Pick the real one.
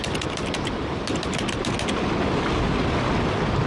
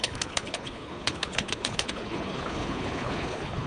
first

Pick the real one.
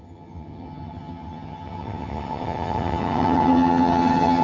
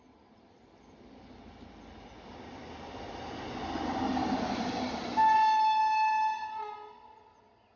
second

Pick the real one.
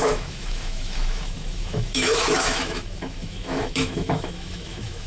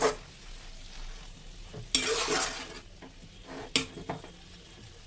second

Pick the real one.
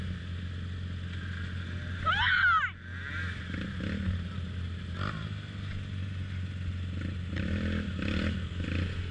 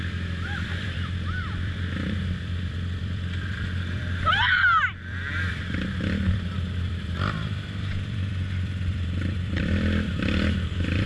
first